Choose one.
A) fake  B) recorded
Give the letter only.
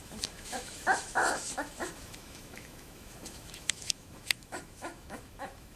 A